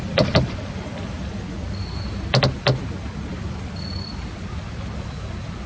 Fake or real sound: real